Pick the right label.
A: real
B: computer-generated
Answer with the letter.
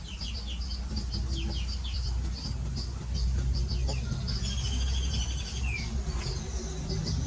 A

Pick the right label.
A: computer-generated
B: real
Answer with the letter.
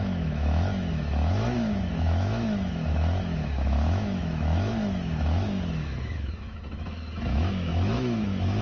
A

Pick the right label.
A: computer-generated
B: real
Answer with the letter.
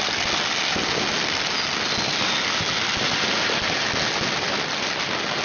B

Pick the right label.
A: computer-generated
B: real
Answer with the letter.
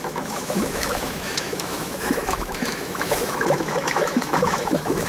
A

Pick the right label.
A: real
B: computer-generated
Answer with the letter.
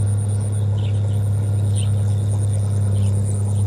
A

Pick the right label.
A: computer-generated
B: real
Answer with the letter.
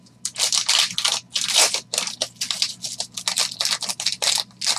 B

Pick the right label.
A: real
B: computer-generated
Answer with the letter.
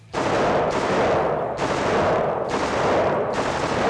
A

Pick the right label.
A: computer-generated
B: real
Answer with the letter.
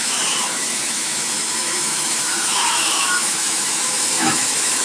A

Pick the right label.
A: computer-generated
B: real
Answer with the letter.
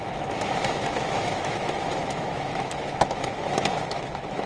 A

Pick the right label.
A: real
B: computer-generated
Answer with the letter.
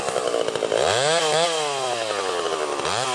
A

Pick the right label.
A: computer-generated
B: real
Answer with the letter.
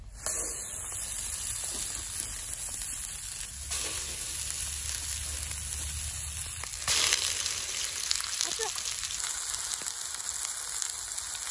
B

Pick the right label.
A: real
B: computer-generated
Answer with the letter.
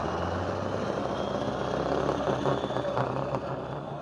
A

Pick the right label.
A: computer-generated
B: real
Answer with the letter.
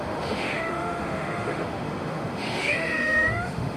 A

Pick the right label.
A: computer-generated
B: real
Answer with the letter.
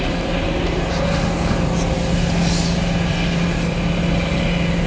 B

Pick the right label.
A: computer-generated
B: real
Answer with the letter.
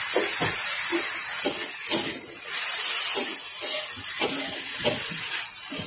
B